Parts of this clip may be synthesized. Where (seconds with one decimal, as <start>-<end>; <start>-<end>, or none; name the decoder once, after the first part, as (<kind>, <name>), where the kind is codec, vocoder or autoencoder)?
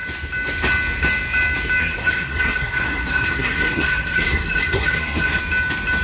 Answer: 1.8-5.4 (codec, SNAC)